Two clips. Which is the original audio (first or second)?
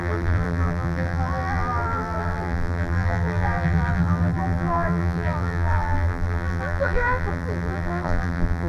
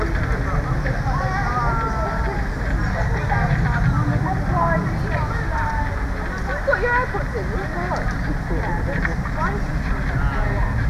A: second